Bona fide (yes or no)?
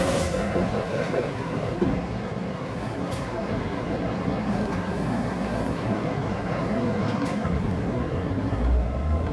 no